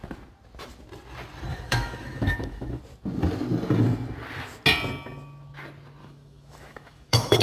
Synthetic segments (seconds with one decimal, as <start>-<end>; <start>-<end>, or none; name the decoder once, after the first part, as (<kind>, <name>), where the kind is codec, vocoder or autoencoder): 1.5-2.8 (autoencoder, DAC-VAE); 6.0-7.4